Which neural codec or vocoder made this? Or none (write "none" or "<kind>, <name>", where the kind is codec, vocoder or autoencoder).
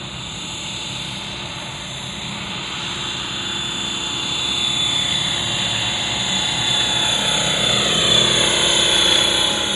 none